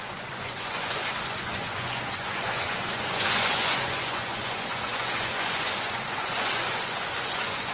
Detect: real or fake fake